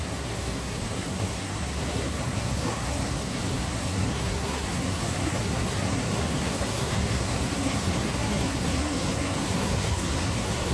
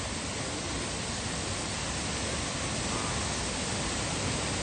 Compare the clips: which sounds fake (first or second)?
first